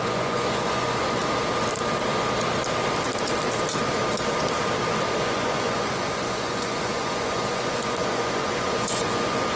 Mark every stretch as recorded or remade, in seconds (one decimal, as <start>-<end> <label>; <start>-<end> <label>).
0.0-1.2 remade; 1.2-5.2 recorded; 5.2-9.6 remade